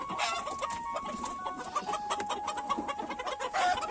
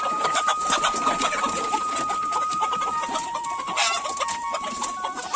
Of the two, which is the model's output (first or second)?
second